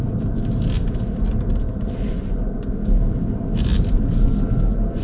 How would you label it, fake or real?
real